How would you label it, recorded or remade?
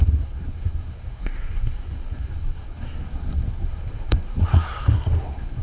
remade